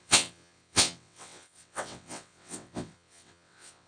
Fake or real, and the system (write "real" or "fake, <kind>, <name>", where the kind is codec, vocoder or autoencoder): fake, vocoder, WaveNeXt